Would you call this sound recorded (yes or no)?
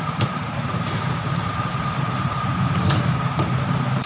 no